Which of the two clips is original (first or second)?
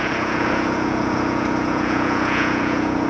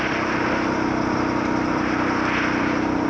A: second